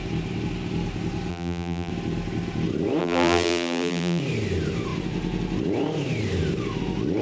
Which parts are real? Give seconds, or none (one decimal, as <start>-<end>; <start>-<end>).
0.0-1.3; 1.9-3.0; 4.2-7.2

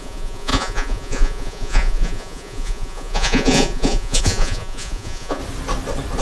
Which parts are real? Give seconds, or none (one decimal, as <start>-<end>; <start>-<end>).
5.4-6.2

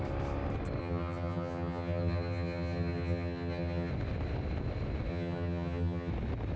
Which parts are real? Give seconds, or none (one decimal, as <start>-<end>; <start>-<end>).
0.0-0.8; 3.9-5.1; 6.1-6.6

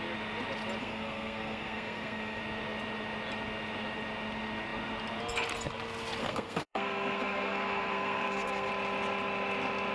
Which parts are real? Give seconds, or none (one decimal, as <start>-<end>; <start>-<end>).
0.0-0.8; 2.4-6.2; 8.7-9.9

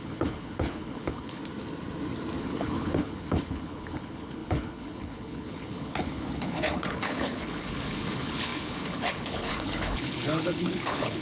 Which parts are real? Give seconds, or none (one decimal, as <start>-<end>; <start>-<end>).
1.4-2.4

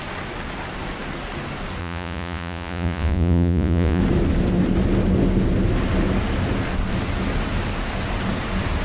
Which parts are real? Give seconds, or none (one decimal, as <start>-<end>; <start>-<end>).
0.0-1.8; 4.0-8.8